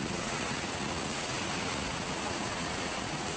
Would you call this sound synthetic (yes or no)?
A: yes